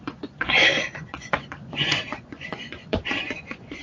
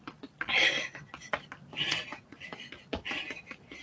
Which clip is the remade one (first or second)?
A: first